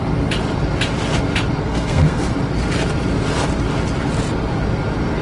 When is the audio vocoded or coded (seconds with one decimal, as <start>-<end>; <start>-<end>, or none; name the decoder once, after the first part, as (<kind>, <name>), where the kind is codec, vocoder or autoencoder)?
1.6-2.3 (codec, SNAC)